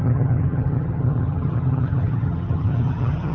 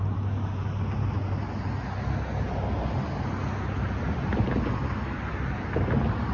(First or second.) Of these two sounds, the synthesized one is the first